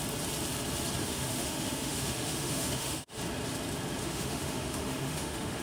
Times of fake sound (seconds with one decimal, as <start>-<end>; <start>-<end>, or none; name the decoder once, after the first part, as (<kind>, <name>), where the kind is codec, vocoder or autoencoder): 1.0-3.2 (autoencoder, DAC-VAE); 4.0-5.6